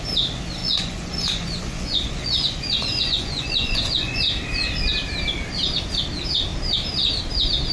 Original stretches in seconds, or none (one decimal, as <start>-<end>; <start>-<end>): 0.0-0.6; 4.2-7.7